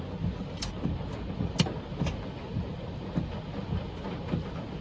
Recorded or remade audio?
recorded